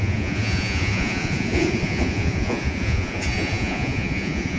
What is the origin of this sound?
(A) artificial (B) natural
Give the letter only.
A